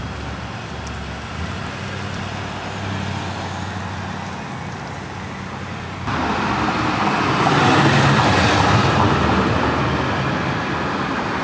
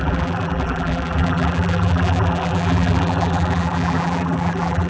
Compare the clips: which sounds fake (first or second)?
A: second